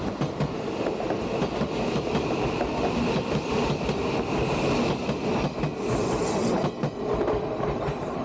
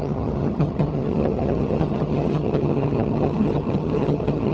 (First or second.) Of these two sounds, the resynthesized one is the second